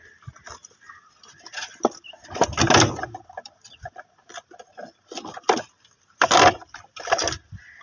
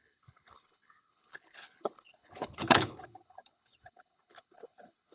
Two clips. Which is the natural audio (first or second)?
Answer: first